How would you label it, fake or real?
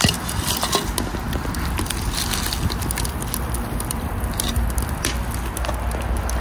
real